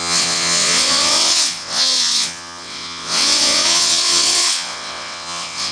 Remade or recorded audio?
remade